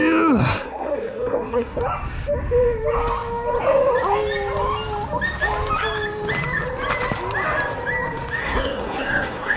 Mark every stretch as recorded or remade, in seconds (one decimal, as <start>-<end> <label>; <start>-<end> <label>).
0.0-0.4 recorded; 0.4-1.8 remade; 1.8-8.4 recorded; 8.4-9.6 remade